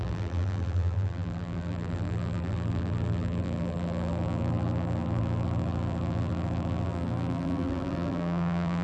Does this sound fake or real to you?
fake